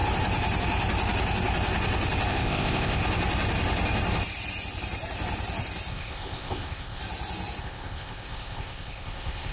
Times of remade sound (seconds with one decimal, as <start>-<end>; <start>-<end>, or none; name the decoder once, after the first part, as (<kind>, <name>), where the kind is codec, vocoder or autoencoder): 2.3-3.0 (codec, ZipCodec); 5.9-7.0; 7.6-9.5